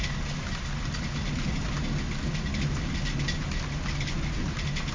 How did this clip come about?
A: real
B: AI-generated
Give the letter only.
A